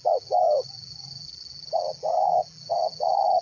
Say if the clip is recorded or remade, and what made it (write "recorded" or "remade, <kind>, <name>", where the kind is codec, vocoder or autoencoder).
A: remade, vocoder, BigVGAN v2